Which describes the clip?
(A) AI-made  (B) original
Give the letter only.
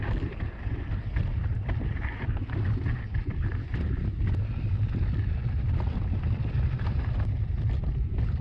A